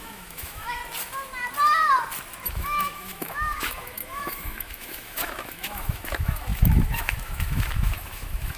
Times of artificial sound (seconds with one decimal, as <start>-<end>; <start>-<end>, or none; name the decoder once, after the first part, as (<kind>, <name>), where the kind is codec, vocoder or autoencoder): 0.0-0.8 (autoencoder, DAC-VAE); 2.5-8.6